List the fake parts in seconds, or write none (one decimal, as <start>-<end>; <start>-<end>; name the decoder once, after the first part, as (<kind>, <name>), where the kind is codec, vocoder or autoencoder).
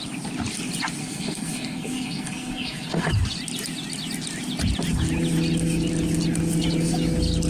1.0-3.1 (codec, SNAC)